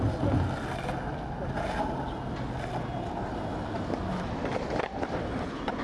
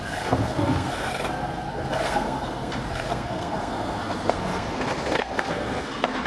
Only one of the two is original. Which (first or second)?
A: first